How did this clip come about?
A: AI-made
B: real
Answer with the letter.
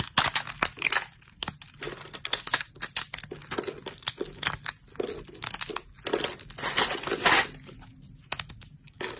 B